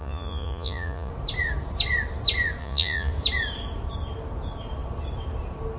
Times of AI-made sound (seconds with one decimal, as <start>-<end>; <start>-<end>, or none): 0.0-1.1; 2.6-3.1